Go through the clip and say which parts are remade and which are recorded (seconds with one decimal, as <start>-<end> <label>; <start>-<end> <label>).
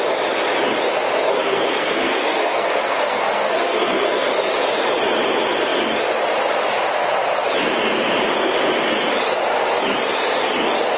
0.0-1.3 recorded; 1.3-4.5 remade; 4.5-11.0 recorded